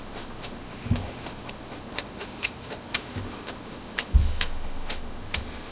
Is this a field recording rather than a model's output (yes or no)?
no